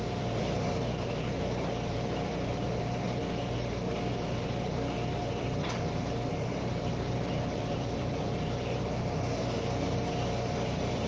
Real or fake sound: fake